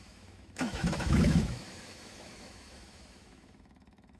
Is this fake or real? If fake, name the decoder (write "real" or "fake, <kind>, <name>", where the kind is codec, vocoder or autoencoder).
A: fake, autoencoder, DAC-VAE